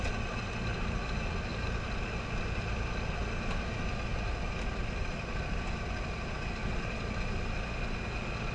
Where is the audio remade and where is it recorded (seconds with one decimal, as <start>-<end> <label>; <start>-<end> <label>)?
0.0-8.5 recorded